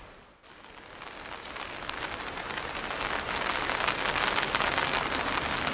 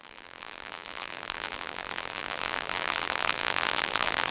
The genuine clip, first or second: first